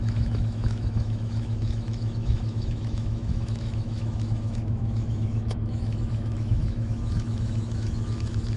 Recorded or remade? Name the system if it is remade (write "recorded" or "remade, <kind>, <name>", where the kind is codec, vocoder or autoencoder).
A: remade, autoencoder, DAC-VAE